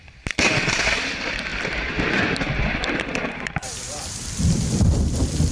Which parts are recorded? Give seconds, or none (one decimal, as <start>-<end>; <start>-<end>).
0.0-1.5; 4.8-5.5